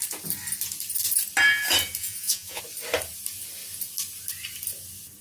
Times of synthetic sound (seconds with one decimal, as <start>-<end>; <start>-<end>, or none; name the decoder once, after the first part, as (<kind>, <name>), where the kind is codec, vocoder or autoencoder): 2.0-2.6 (vocoder, Vocos)